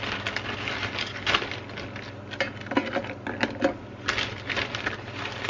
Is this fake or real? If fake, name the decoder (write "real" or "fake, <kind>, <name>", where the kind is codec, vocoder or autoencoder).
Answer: real